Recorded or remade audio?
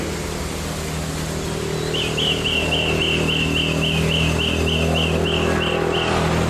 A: recorded